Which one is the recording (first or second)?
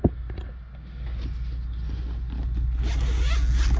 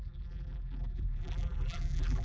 first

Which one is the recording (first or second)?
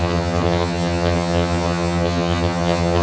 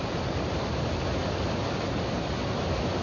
second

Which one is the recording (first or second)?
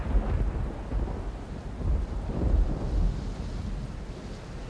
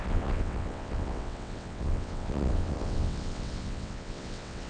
first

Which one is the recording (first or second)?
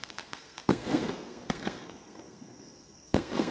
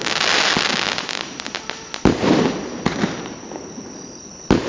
second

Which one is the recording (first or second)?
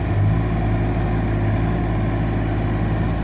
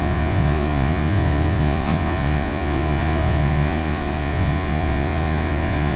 first